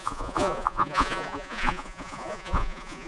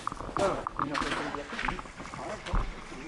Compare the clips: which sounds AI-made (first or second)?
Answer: first